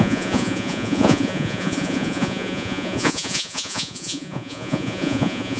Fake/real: fake